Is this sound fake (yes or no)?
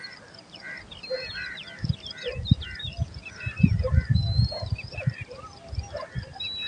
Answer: no